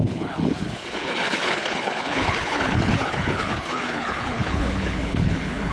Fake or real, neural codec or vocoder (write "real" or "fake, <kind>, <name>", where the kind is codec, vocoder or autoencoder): fake, codec, HILCodec